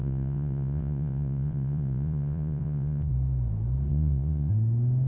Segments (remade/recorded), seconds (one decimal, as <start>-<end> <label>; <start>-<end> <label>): 0.0-3.1 remade; 3.1-3.9 recorded; 3.9-4.5 remade; 4.5-5.1 recorded